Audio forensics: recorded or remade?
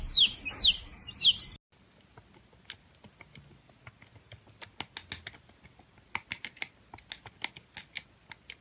recorded